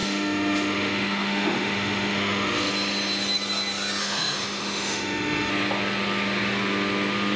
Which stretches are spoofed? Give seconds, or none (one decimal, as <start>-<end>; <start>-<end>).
0.0-2.7; 4.0-5.5